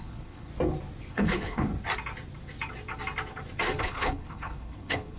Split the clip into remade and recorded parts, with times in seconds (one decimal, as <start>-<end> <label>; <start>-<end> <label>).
0.0-0.5 remade; 0.5-1.1 recorded; 1.1-1.7 remade; 1.7-3.8 recorded; 3.8-5.2 remade